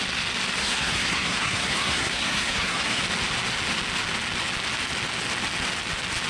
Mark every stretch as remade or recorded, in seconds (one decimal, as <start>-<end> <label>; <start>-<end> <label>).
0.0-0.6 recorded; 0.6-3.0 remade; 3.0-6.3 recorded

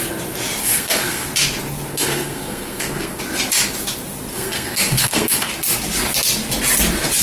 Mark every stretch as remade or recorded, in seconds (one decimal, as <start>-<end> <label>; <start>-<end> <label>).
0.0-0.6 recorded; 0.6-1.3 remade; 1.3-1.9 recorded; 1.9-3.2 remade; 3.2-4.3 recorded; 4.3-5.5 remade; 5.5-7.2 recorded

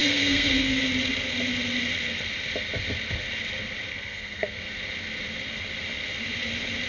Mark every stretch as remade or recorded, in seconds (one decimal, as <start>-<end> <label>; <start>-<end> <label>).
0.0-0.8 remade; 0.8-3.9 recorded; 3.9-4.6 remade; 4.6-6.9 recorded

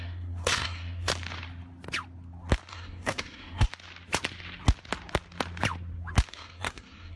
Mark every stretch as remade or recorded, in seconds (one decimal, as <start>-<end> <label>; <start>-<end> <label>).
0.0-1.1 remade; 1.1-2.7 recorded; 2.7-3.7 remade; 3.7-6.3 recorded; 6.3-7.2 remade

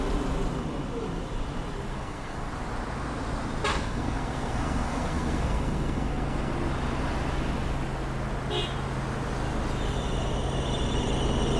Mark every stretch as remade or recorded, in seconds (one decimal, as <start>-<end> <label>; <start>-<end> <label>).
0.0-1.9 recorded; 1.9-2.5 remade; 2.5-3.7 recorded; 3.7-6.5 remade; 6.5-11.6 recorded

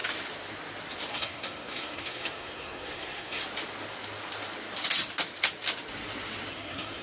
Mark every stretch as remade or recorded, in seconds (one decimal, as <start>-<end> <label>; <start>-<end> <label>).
0.0-1.1 recorded; 1.1-3.4 remade; 3.4-6.5 recorded; 6.5-7.0 remade

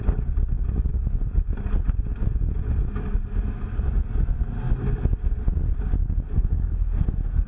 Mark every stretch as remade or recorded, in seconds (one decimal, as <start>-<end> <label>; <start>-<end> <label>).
0.0-6.3 recorded; 6.3-7.5 remade

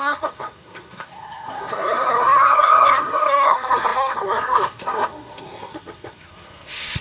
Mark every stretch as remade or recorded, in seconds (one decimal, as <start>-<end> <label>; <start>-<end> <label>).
0.0-7.0 remade